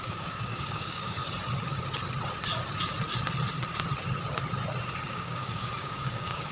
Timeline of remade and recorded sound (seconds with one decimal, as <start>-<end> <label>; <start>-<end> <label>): 0.0-1.2 remade; 1.2-5.1 recorded; 5.1-6.5 remade